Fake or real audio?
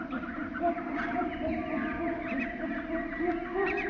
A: real